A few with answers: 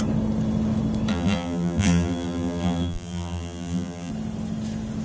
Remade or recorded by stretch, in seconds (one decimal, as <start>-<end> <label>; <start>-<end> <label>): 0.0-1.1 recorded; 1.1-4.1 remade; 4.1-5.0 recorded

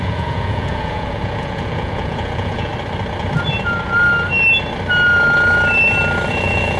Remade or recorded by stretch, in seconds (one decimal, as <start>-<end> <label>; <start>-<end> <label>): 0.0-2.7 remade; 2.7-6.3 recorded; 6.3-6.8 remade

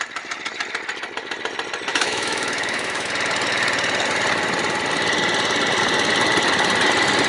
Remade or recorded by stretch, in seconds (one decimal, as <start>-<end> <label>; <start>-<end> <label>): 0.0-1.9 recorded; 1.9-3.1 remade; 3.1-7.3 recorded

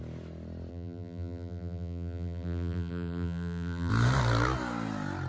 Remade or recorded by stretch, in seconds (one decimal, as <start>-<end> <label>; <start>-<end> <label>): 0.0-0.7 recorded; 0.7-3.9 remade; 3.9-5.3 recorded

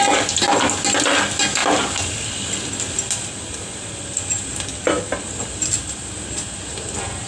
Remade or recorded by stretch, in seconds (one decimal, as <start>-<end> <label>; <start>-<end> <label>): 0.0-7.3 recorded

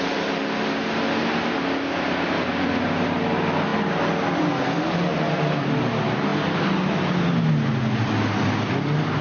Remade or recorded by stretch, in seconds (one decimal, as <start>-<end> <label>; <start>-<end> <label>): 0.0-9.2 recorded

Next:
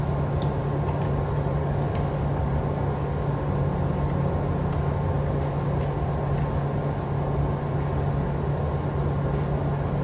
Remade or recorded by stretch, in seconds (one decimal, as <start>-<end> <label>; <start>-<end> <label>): 0.0-1.6 recorded; 1.6-2.5 remade; 2.5-10.0 recorded

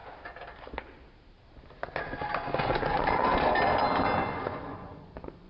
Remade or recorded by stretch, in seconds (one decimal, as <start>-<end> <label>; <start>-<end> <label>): 0.0-2.6 recorded; 2.6-3.3 remade; 3.3-4.2 recorded; 4.2-5.5 remade